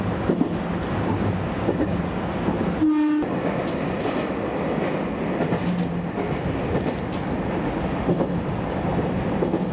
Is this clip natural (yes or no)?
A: yes